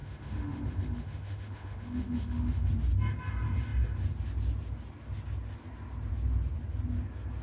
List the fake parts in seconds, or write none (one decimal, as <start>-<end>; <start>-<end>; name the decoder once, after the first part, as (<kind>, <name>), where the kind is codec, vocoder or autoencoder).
0.0-2.7 (autoencoder, DAC-VAE)